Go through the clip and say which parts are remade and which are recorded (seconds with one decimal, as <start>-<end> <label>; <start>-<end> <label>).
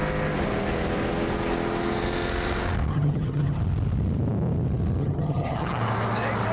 0.0-2.9 recorded; 2.9-3.6 remade; 3.6-5.0 recorded; 5.0-5.8 remade; 5.8-6.5 recorded